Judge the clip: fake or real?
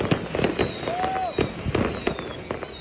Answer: real